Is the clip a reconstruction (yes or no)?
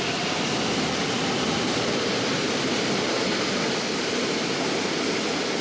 no